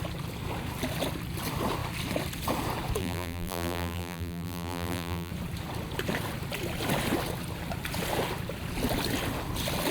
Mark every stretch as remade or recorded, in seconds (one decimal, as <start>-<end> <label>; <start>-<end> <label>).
0.0-3.0 recorded; 3.0-5.3 remade; 5.3-9.9 recorded